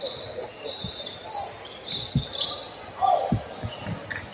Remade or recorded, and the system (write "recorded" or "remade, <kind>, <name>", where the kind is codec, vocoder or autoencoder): recorded